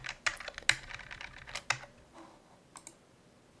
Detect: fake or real real